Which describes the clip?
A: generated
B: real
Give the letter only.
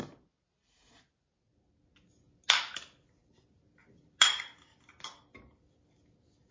B